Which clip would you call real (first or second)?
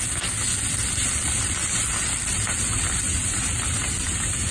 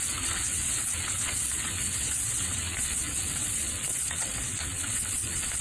first